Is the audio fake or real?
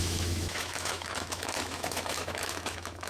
fake